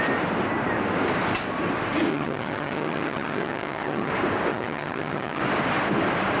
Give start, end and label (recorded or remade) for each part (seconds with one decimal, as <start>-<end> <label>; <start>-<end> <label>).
0.0-2.1 recorded; 2.1-4.1 remade; 4.1-4.5 recorded; 4.5-5.4 remade; 5.4-6.4 recorded